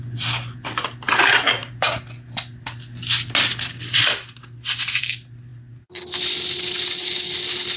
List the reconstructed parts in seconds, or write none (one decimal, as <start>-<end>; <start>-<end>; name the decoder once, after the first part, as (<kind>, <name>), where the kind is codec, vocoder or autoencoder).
none